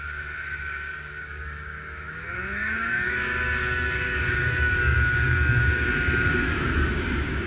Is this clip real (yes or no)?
no